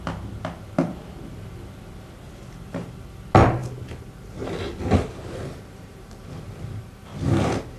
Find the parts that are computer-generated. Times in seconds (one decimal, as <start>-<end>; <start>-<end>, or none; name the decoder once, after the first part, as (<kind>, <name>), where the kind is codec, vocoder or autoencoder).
none